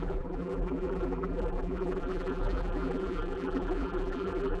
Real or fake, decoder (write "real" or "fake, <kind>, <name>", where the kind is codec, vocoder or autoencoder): fake, vocoder, BigVGAN v2